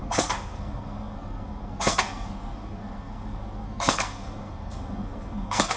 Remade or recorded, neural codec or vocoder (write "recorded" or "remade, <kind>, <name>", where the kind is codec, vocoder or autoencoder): remade, codec, SNAC